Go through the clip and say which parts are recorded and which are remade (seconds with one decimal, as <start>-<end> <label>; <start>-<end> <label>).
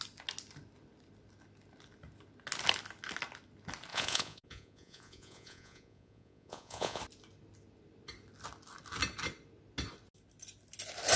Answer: 0.0-3.9 recorded; 3.9-7.0 remade; 7.0-11.2 recorded